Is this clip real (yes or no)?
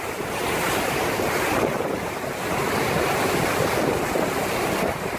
yes